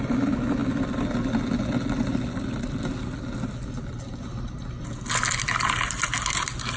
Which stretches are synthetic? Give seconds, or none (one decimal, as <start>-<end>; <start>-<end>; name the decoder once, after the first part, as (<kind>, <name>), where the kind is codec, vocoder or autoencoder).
none